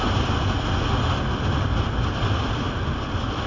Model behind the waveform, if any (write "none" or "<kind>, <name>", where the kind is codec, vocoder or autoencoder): none